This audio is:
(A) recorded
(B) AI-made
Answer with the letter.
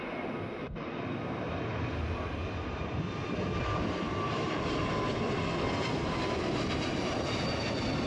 A